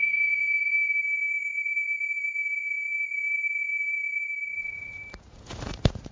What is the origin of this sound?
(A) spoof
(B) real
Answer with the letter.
A